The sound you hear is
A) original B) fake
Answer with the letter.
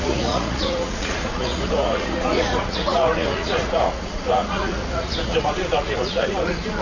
B